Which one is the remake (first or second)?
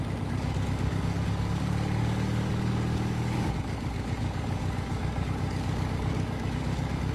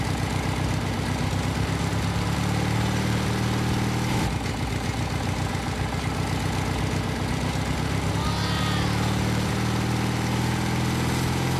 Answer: first